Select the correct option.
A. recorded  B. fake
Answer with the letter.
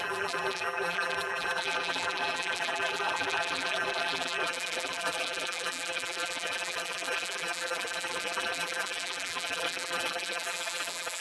B